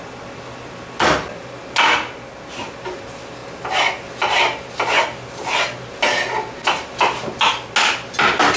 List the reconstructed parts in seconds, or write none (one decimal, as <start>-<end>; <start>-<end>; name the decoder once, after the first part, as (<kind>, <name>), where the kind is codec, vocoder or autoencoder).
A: none